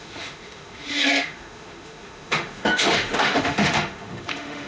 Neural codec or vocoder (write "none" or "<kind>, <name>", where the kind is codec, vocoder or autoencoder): autoencoder, DAC-VAE